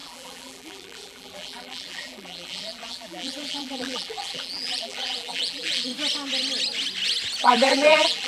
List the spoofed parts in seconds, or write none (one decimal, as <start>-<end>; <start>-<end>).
0.0-5.9; 7.4-8.3